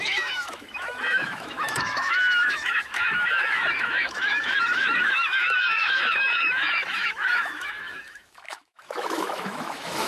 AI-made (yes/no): yes